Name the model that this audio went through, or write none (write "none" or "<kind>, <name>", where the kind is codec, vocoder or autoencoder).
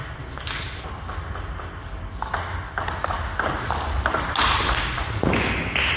none